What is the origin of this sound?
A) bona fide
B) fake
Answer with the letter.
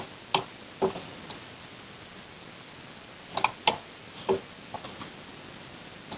A